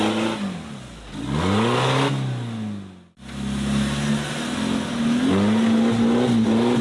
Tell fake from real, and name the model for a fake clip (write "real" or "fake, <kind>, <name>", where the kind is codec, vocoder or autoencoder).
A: real